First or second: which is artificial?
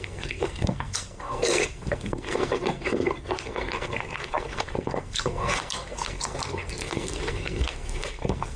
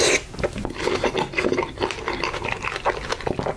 first